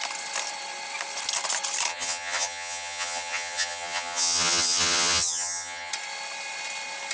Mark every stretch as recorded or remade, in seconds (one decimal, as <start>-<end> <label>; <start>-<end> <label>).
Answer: 0.0-1.9 recorded; 1.9-5.9 remade; 5.9-7.1 recorded

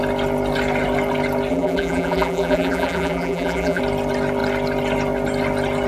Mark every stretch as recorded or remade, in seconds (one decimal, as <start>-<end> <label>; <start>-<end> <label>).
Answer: 0.0-1.5 recorded; 1.5-3.8 remade; 3.8-5.9 recorded

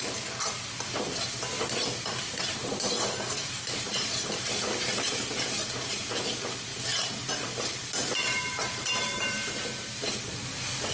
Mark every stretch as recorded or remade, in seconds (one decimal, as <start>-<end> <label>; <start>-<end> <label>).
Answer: 0.0-2.6 recorded; 2.6-4.7 remade; 4.7-8.0 recorded; 8.0-9.5 remade; 9.5-10.9 recorded

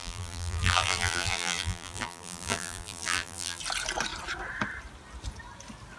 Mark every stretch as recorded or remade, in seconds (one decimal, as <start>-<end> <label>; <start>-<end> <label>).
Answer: 0.0-3.6 remade; 3.6-6.0 recorded